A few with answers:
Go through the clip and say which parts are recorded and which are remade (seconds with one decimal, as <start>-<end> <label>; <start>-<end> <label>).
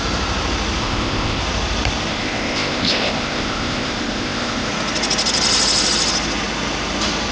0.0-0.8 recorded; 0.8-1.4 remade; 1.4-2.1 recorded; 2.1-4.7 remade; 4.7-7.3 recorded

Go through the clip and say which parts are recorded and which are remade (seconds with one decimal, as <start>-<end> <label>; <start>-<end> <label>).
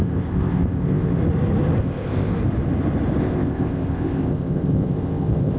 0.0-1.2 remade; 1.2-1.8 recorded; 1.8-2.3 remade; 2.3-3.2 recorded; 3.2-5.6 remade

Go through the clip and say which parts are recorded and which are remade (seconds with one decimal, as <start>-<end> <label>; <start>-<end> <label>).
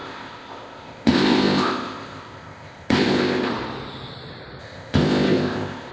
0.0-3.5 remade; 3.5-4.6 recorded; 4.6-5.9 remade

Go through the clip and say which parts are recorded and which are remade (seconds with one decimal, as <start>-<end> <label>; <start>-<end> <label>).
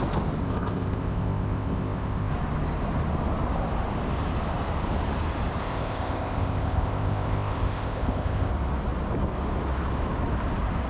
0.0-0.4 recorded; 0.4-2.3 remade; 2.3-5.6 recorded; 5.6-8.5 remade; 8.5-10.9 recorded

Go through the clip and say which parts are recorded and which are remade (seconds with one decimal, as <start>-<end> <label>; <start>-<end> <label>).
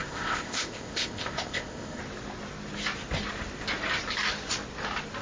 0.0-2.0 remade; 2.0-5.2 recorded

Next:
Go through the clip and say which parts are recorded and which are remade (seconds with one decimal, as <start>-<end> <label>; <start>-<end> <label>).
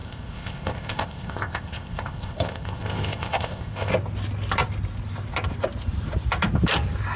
0.0-3.9 remade; 3.9-7.2 recorded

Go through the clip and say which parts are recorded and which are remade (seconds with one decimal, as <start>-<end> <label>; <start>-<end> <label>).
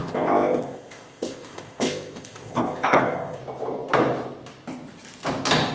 0.0-3.4 remade; 3.4-5.7 recorded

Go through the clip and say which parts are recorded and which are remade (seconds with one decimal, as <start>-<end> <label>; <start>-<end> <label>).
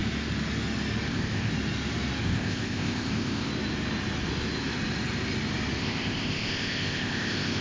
0.0-1.1 recorded; 1.1-1.5 remade; 1.5-2.2 recorded; 2.2-3.5 remade; 3.5-5.8 recorded; 5.8-7.6 remade